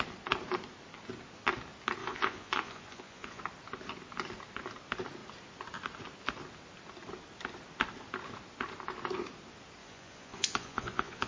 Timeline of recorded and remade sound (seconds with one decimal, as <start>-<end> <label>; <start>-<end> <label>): 0.0-2.0 recorded; 2.0-3.4 remade; 3.4-9.8 recorded; 9.8-11.3 remade